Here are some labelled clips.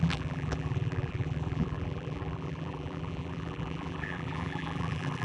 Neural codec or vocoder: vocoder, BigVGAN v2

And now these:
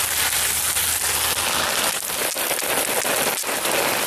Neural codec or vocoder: none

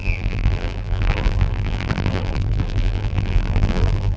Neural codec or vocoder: vocoder, BigVGAN v2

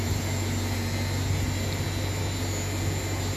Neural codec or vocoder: none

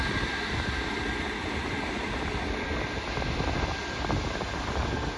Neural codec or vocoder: none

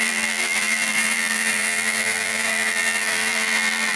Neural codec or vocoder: vocoder, BigVGAN v2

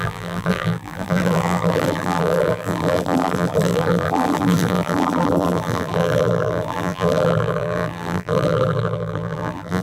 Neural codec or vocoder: vocoder, BigVGAN v2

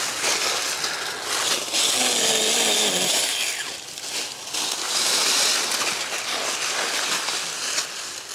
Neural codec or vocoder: none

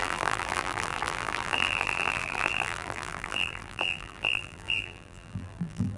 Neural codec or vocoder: vocoder, BigVGAN v2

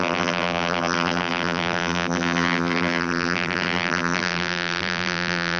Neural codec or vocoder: vocoder, BigVGAN v2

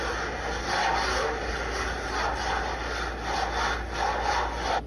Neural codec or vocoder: none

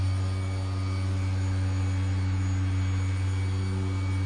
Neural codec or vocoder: none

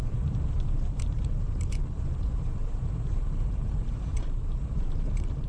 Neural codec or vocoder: vocoder, BigVGAN v2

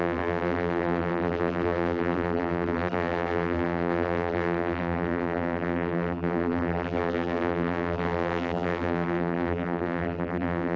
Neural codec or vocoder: vocoder, BigVGAN v2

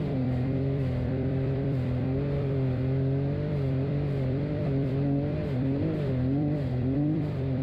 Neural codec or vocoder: vocoder, BigVGAN v2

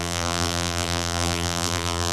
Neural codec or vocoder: vocoder, BigVGAN v2